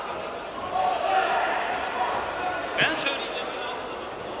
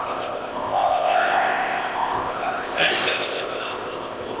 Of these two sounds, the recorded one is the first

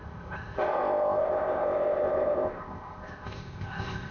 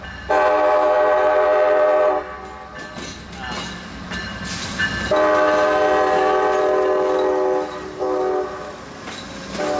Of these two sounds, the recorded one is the second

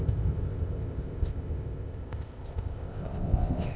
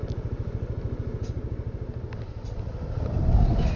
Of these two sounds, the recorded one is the second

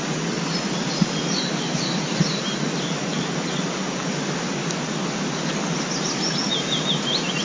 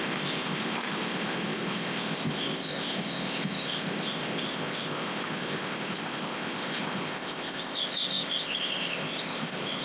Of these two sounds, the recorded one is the first